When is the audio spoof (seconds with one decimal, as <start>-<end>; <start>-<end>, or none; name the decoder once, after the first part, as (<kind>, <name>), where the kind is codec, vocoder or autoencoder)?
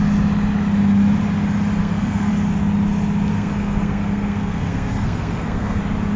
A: 1.8-2.3 (codec, SNAC); 3.3-5.8